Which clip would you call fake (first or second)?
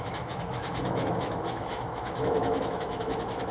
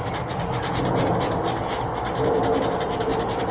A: first